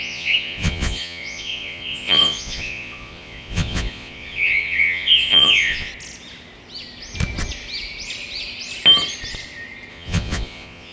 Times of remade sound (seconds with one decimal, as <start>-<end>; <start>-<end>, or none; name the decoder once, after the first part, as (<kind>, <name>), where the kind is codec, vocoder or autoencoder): 0.0-5.9 (vocoder, Vocos); 9.9-10.9